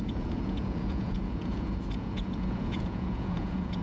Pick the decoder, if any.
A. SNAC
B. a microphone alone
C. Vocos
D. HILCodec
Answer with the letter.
C